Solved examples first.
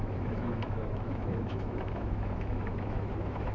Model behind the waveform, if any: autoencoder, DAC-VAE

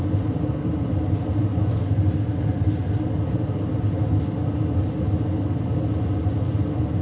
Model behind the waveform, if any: none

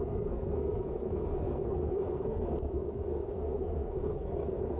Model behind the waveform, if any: codec, SNAC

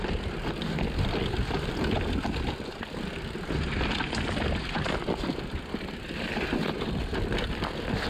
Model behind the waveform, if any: none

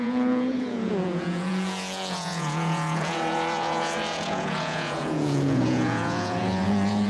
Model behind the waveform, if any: vocoder, Vocos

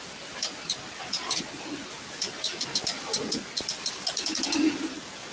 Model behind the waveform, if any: none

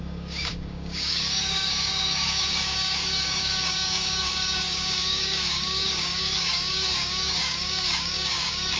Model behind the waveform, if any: codec, DAC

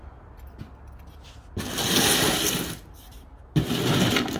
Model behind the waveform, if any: none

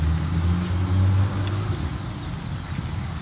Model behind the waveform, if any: none